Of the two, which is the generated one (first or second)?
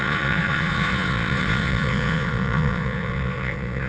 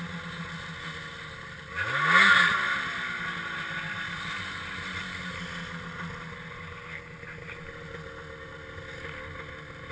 first